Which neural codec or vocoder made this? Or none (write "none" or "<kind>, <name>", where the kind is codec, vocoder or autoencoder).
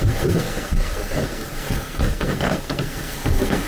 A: codec, SNAC